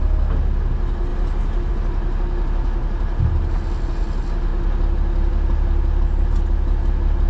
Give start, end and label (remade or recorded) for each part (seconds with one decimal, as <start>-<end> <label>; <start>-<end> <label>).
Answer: 0.0-7.3 recorded